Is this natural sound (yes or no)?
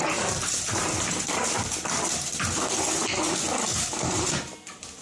yes